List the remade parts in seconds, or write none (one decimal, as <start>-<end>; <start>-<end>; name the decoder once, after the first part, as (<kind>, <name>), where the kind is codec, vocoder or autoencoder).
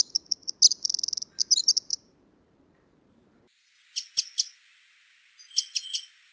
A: 1.9-3.4 (vocoder, BigVGAN v2)